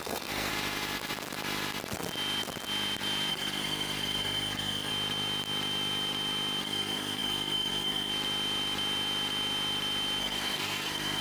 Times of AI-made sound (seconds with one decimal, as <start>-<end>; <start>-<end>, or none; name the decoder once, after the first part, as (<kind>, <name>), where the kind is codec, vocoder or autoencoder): 0.0-0.5 (codec, SNAC); 3.3-4.9; 6.6-8.1; 10.2-11.2